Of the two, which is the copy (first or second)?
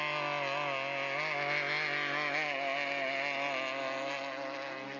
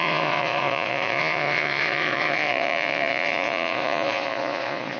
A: second